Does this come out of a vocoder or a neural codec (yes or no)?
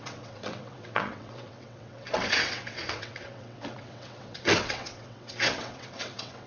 yes